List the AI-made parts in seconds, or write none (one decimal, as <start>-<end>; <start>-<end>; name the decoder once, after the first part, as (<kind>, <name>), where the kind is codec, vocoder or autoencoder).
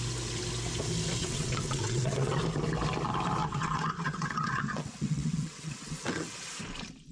1.2-2.4 (vocoder, WaveNeXt); 3.4-6.5